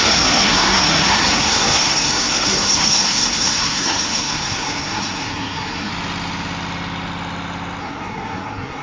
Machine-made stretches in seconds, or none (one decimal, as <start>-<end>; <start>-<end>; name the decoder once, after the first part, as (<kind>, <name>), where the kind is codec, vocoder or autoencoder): 0.0-5.9 (codec, SNAC); 7.8-8.8